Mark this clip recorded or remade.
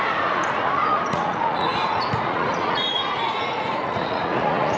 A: remade